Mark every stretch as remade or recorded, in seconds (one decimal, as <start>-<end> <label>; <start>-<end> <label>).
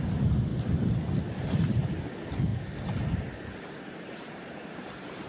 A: 0.0-0.5 recorded; 0.5-1.2 remade; 1.2-5.3 recorded